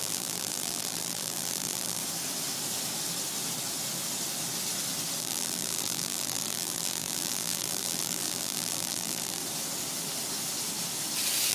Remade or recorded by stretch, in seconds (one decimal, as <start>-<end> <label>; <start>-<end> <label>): 0.0-2.0 remade; 2.0-5.2 recorded; 5.2-9.4 remade; 9.4-11.5 recorded